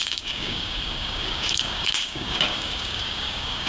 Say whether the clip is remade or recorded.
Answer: remade